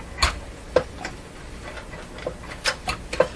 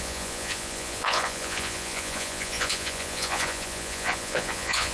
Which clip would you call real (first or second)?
first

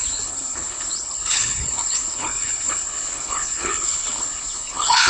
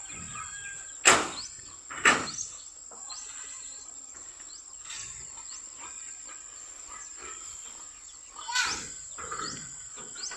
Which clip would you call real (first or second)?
second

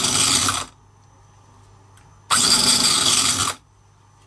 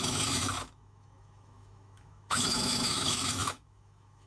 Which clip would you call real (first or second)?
first